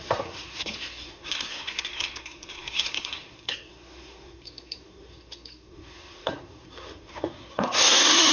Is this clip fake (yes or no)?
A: yes